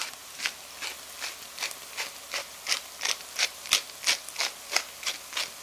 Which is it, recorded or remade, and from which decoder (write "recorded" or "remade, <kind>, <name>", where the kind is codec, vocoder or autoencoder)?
recorded